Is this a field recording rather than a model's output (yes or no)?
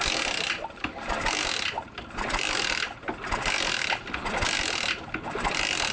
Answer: yes